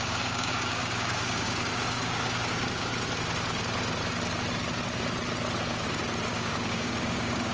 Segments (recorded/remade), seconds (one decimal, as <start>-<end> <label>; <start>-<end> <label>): 0.0-2.9 remade; 2.9-6.3 recorded; 6.3-7.5 remade